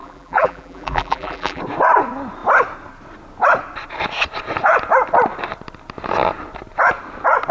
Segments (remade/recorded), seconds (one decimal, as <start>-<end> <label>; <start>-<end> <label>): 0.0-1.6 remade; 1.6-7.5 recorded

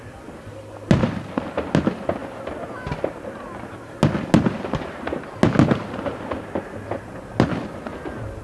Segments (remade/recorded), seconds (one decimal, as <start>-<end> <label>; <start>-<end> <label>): 0.0-8.4 recorded

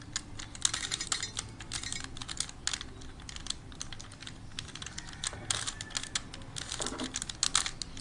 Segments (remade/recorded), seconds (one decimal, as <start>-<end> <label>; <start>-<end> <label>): 0.0-8.0 recorded

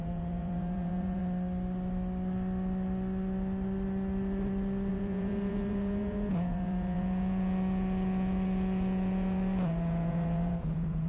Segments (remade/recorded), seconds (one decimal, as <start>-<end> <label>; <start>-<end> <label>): 0.0-1.2 remade; 1.2-4.9 recorded; 4.9-11.1 remade

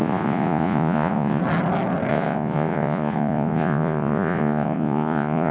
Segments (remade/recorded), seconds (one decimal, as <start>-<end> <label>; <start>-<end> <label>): 0.0-1.4 remade; 1.4-2.1 recorded; 2.1-5.5 remade

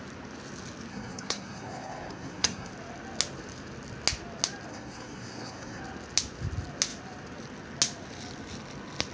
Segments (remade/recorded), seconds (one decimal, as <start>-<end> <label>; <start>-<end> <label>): 0.0-0.9 recorded; 0.9-2.7 remade; 2.7-4.7 recorded; 4.7-5.8 remade; 5.8-9.1 recorded

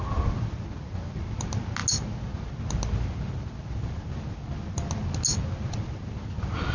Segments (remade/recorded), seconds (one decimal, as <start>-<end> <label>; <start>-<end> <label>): 0.0-6.7 recorded

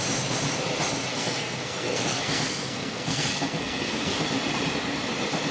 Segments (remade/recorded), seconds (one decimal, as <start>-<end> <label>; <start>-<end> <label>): 0.0-1.1 recorded; 1.1-4.2 remade; 4.2-5.5 recorded